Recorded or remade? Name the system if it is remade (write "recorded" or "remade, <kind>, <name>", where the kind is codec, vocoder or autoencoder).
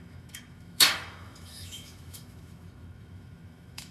remade, autoencoder, DAC-VAE